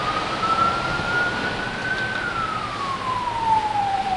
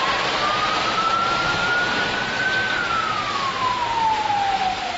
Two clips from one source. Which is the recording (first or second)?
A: second